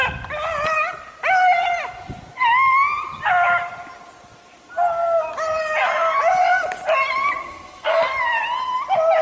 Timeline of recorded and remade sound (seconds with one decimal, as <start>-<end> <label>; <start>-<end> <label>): 0.0-7.4 recorded; 7.4-8.0 remade; 8.0-9.2 recorded